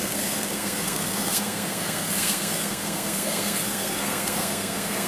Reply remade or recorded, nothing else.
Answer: remade